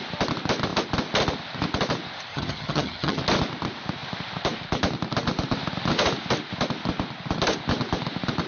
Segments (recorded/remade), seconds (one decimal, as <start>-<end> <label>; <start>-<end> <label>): 0.0-2.3 recorded; 2.3-3.2 remade; 3.2-8.5 recorded